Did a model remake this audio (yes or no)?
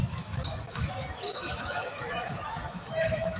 yes